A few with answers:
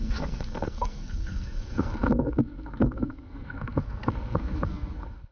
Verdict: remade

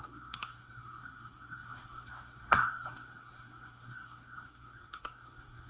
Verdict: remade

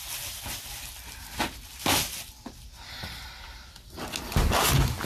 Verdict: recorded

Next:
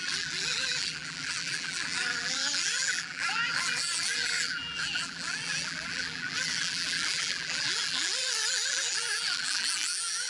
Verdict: remade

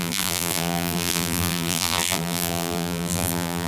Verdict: remade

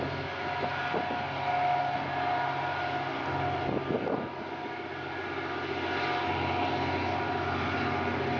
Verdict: recorded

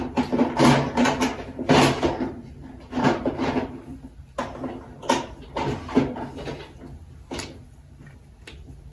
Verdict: recorded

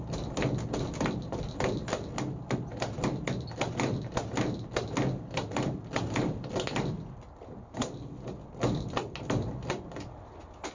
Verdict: recorded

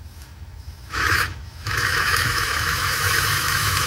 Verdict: remade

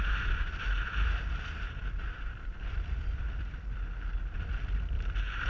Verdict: remade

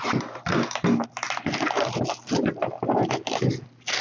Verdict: recorded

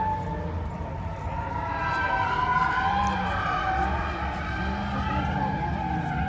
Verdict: recorded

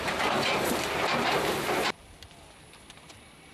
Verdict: remade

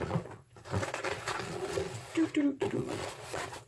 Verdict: remade